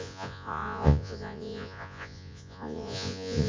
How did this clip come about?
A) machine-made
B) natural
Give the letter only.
A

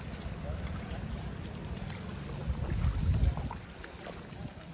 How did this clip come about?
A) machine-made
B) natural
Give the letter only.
B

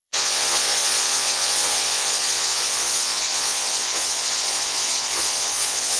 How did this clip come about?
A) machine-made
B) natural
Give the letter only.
A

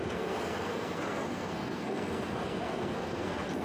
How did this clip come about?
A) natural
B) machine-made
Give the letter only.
B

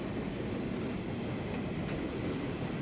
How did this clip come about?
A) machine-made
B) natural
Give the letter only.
B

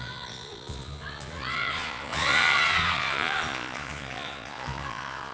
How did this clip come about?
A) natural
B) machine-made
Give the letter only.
B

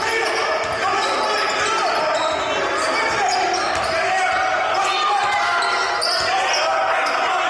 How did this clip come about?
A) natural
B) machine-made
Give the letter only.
A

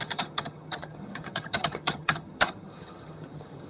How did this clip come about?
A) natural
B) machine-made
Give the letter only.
B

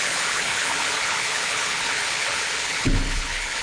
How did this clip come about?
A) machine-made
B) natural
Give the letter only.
A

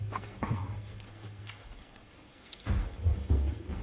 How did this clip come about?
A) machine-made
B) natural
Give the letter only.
A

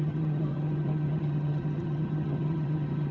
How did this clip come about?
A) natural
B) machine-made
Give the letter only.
B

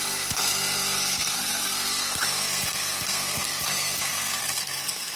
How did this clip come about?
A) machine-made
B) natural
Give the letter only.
A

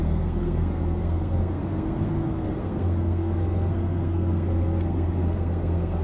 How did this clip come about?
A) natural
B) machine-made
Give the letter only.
B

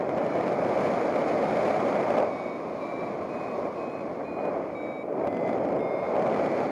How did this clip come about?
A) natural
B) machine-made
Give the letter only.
A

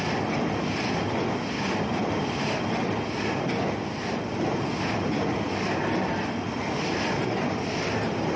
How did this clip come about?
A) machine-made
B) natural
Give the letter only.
B